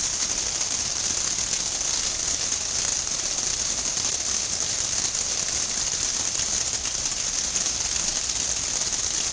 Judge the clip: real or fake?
real